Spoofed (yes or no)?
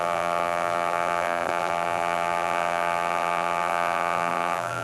yes